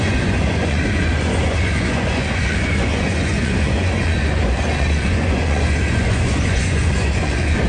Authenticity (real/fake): fake